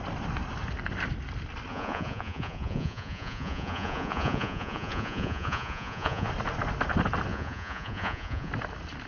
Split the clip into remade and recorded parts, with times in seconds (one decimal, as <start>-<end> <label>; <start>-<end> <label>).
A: 0.0-1.7 recorded; 1.7-6.3 remade; 6.3-7.3 recorded; 7.3-8.5 remade; 8.5-9.1 recorded